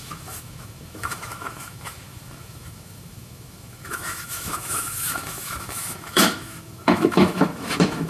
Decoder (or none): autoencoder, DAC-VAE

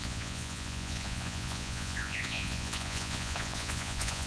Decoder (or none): vocoder, Vocos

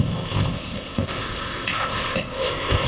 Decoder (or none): codec, ZipCodec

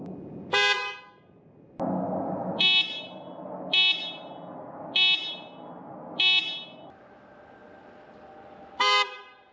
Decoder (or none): none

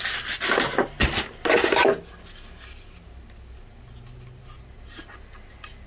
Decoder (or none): none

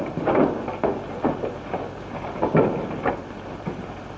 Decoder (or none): vocoder, BigVGAN v2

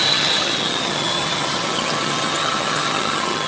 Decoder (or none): vocoder, HiFi-GAN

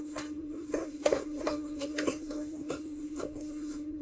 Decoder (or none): codec, SNAC